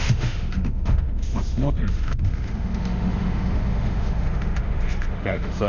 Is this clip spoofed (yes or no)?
yes